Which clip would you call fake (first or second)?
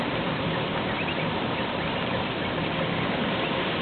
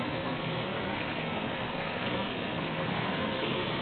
second